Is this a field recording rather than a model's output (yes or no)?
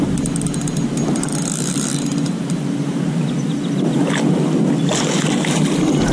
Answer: yes